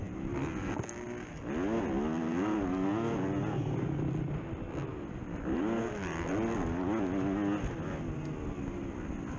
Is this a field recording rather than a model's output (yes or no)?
yes